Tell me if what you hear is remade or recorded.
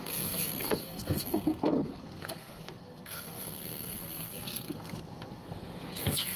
remade